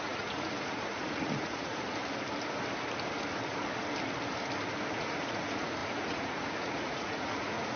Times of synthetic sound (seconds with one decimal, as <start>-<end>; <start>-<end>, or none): 0.0-2.0; 4.9-7.8